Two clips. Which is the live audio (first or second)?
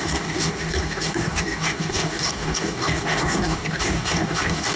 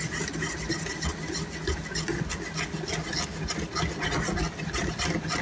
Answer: second